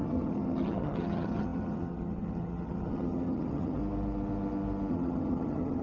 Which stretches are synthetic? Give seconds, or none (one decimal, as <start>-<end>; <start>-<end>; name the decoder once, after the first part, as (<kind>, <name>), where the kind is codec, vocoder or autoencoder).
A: 0.0-3.8 (vocoder, HiFi-GAN); 4.9-5.8